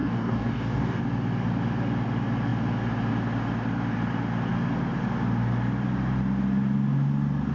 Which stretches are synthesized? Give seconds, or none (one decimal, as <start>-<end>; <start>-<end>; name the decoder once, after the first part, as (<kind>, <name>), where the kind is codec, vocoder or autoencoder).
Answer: 0.0-1.0 (codec, DAC)